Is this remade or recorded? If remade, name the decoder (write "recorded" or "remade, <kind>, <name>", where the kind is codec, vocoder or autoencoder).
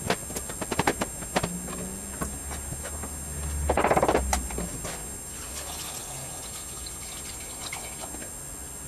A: recorded